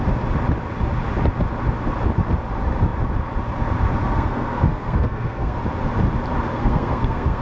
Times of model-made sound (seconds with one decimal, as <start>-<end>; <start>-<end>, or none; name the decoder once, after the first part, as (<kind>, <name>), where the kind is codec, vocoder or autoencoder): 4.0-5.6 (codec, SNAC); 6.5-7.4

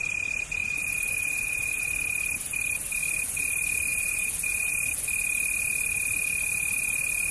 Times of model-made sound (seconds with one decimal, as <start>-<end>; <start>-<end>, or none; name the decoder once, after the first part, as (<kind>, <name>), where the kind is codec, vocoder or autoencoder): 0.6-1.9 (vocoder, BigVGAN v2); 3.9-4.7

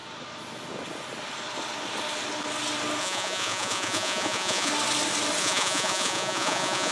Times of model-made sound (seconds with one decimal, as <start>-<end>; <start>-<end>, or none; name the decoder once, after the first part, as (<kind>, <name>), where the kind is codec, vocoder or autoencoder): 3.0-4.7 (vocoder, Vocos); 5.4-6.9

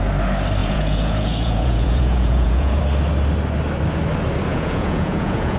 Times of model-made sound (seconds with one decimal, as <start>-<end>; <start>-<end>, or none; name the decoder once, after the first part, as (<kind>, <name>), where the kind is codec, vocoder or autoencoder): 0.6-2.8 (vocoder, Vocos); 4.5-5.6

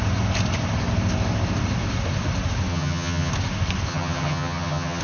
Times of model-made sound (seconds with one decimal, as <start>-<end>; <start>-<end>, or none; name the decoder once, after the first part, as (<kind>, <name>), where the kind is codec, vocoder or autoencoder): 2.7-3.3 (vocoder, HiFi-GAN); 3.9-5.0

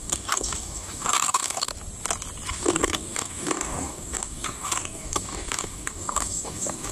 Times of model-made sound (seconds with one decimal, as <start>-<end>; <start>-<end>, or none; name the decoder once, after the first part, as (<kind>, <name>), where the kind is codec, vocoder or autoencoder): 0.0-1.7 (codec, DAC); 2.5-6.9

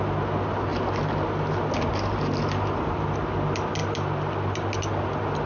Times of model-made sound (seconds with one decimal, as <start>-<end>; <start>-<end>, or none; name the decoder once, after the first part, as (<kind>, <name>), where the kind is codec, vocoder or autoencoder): none